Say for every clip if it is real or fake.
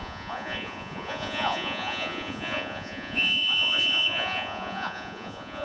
fake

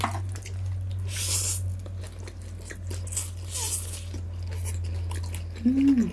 real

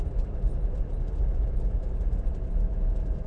real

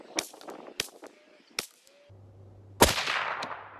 real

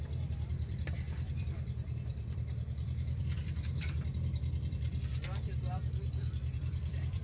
fake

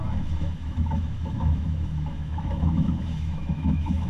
fake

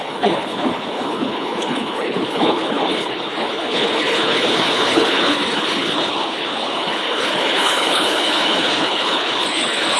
fake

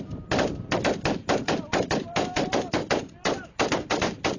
fake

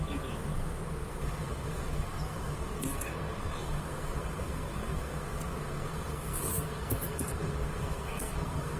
fake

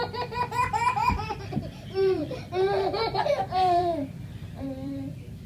fake